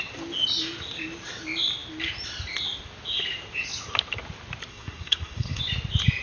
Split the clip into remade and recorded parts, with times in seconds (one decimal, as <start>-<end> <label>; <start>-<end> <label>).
0.0-4.7 recorded; 4.7-5.6 remade; 5.6-6.2 recorded